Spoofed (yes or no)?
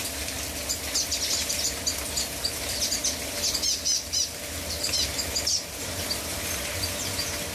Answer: no